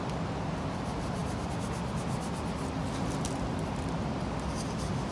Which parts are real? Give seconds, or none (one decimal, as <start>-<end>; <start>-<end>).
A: 0.0-5.1